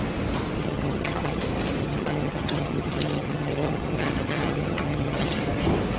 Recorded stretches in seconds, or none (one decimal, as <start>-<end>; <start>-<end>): 0.0-0.6; 1.4-1.8; 5.4-6.0